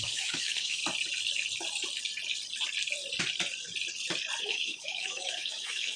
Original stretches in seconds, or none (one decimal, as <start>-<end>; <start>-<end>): 0.8-4.4